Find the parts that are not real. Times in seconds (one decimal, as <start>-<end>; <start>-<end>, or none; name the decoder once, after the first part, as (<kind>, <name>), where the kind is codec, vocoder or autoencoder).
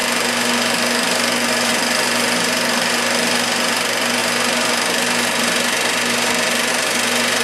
none